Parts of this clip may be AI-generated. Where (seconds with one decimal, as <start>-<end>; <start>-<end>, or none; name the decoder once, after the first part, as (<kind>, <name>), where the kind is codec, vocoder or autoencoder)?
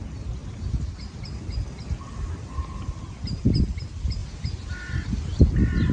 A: none